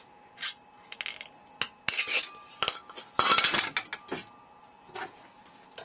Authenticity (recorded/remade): recorded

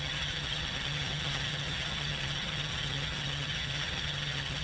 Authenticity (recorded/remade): remade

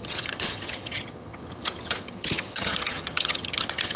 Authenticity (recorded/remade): remade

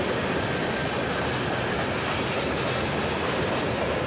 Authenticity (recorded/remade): recorded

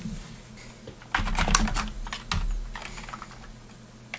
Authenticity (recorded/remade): recorded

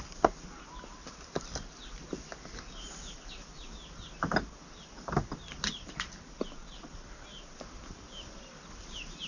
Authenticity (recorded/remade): recorded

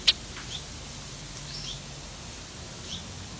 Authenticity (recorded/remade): recorded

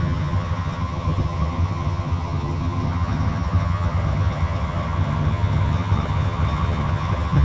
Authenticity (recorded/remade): remade